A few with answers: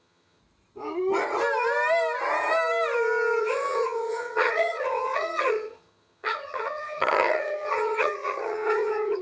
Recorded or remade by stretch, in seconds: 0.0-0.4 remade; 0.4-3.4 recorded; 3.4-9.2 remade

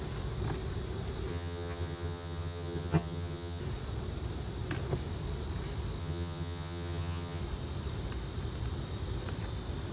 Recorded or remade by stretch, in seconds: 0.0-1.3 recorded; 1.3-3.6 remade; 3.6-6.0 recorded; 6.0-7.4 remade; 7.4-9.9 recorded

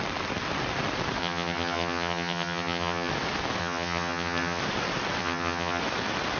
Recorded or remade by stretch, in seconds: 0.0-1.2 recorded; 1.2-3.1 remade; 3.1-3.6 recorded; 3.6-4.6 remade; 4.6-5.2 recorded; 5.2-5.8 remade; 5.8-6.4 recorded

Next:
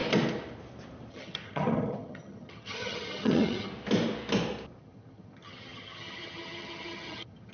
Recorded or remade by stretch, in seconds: 0.0-1.1 recorded; 1.1-3.7 remade; 3.7-4.8 recorded; 4.8-7.5 remade